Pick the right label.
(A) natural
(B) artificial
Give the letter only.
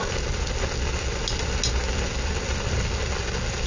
A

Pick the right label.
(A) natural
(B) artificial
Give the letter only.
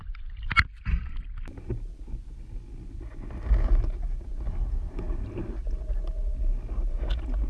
A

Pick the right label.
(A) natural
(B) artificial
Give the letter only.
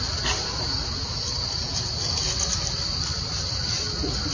A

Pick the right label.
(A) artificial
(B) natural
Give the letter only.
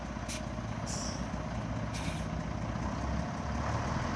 B